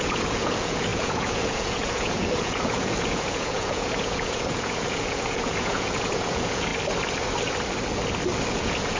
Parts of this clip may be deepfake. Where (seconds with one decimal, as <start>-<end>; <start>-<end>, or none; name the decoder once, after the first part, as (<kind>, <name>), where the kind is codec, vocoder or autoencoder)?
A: 0.0-6.7 (vocoder, Vocos); 8.5-9.0